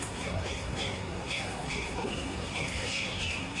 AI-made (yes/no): yes